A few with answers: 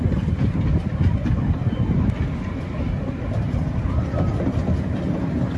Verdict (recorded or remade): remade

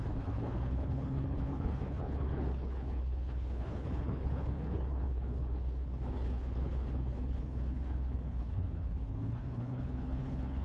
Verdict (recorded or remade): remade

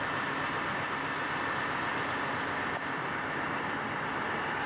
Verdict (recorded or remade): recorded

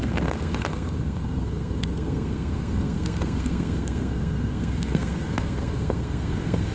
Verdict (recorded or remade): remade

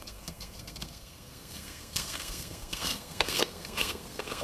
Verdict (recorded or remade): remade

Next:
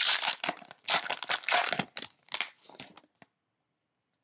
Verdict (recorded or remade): recorded